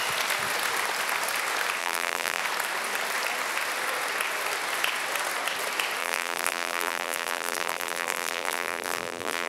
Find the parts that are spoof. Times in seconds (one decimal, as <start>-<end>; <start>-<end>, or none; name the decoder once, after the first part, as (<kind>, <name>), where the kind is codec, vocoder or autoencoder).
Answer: 1.8-2.4 (vocoder, BigVGAN v2); 6.0-9.5